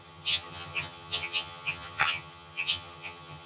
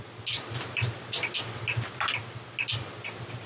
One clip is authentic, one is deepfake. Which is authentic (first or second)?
second